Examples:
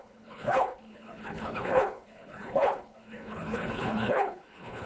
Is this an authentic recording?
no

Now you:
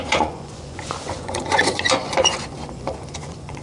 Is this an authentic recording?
no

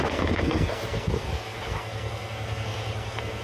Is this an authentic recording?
no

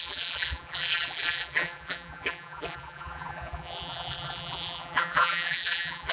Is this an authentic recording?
no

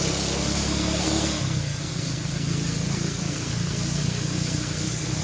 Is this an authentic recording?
no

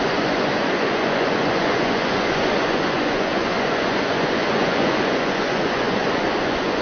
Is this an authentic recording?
no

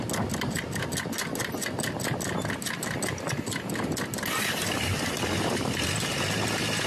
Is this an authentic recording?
yes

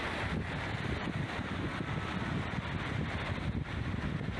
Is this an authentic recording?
yes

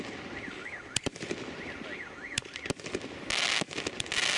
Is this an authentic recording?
yes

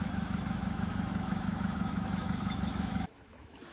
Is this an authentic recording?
no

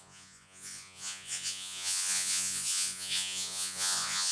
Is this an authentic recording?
no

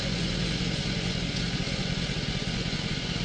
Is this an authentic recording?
no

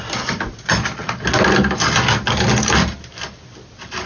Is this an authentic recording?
yes